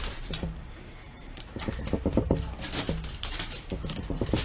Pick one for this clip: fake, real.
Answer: fake